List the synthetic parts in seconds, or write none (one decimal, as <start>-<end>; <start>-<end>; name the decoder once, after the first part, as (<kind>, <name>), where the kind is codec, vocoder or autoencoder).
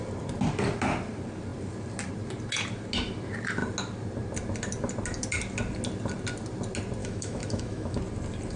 7.0-8.0 (autoencoder, DAC-VAE)